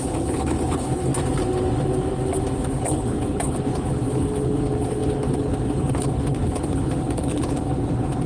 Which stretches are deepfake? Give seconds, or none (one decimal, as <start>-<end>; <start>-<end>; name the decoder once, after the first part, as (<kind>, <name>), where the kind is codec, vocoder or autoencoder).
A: 0.0-1.1 (codec, HILCodec); 2.7-8.3